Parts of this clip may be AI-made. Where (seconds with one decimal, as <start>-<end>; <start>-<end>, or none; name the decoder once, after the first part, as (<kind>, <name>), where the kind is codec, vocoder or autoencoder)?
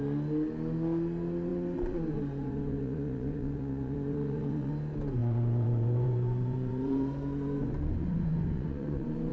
1.5-4.7 (vocoder, Vocos); 5.2-9.3